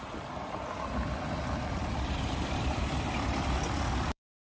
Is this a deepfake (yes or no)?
yes